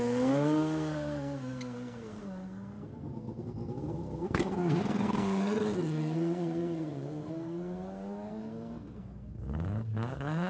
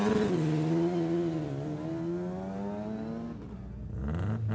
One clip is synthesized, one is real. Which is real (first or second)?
second